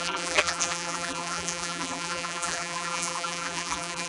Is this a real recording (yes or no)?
no